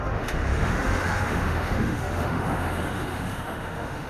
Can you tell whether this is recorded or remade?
remade